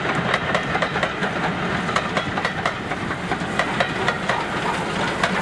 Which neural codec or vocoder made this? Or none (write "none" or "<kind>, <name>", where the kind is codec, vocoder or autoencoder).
none